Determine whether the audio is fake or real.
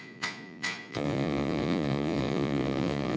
fake